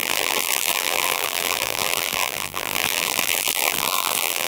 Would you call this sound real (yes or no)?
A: no